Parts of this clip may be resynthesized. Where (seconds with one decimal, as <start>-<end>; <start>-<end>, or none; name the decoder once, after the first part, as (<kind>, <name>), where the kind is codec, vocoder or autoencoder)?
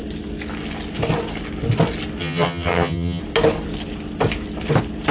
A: 2.2-3.2 (vocoder, HiFi-GAN)